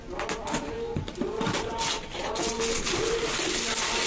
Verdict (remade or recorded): recorded